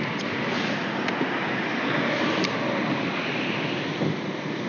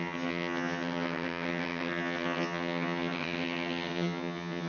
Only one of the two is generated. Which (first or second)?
second